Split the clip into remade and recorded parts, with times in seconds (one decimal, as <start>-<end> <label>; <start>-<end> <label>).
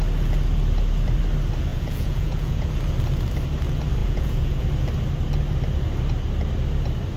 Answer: 0.0-1.7 recorded; 1.7-2.7 remade; 2.7-4.0 recorded; 4.0-4.6 remade; 4.6-7.2 recorded